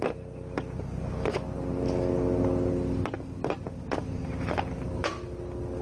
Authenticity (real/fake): real